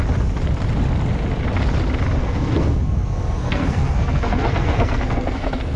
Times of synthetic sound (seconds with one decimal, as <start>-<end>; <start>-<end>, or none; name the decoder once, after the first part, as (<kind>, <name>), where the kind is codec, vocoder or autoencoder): 2.2-5.8 (codec, SNAC)